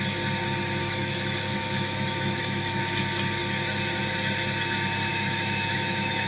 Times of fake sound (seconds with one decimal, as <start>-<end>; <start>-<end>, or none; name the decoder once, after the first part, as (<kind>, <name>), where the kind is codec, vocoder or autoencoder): 0.8-2.8 (autoencoder, DAC-VAE); 5.1-6.3